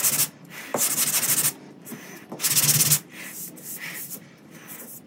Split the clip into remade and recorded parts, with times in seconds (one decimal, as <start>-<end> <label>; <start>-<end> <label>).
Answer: 0.0-5.1 recorded